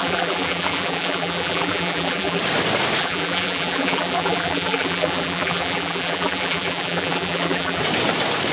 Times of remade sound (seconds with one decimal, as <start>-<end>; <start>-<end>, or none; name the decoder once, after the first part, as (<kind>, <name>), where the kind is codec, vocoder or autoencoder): 0.0-2.4 (vocoder, BigVGAN v2); 3.0-7.8